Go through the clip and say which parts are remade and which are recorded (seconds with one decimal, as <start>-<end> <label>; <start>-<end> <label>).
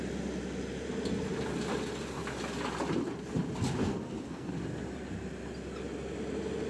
0.0-3.9 recorded; 3.9-4.5 remade; 4.5-6.7 recorded